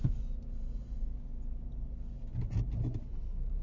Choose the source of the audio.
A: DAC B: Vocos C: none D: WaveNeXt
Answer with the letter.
C